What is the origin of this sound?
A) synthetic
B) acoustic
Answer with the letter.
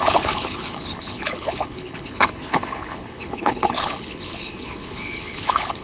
A